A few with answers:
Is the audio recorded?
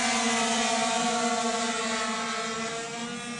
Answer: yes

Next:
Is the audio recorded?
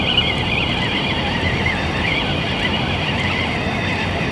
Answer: no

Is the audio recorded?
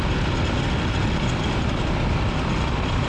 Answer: yes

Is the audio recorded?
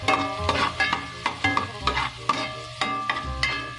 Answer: yes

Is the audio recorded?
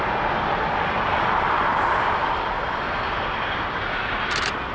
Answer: yes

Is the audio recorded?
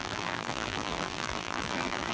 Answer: no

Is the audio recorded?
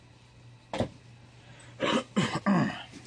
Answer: yes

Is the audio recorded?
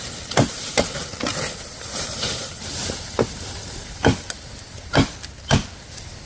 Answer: no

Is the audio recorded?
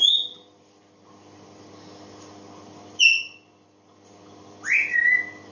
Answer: yes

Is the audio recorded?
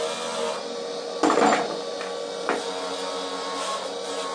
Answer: yes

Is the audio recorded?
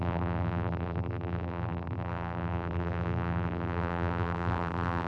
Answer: no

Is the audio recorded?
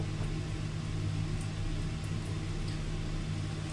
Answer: yes